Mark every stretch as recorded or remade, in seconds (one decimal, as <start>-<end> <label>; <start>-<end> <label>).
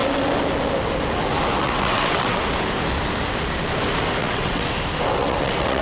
0.0-1.6 recorded; 1.6-2.4 remade; 2.4-4.2 recorded; 4.2-4.7 remade; 4.7-5.2 recorded; 5.2-5.8 remade